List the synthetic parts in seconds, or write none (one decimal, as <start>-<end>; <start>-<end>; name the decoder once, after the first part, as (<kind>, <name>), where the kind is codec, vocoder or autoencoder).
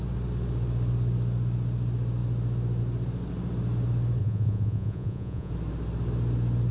4.2-5.5 (vocoder, Vocos)